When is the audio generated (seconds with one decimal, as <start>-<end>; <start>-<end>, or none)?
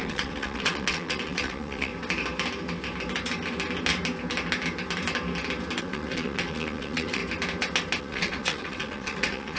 0.0-1.9; 5.8-7.2; 8.0-9.6